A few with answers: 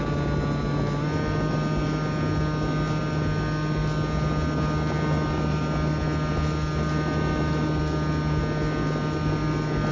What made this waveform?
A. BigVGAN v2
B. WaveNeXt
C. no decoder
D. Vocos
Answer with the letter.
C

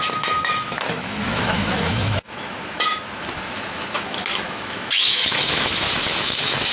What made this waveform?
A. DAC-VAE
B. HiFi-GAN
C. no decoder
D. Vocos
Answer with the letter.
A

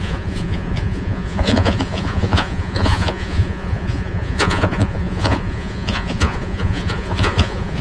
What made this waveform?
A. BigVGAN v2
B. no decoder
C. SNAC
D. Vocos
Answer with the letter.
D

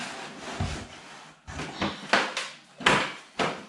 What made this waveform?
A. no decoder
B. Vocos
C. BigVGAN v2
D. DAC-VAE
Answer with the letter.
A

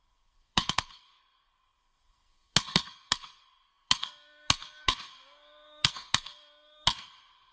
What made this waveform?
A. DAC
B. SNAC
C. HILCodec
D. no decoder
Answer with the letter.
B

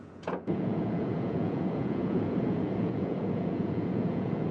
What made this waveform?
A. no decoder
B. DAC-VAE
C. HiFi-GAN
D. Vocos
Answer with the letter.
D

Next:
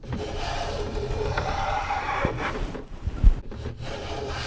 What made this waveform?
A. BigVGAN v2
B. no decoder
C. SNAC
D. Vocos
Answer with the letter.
A